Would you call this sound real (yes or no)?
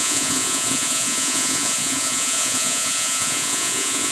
no